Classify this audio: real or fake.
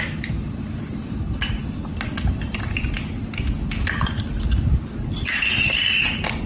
real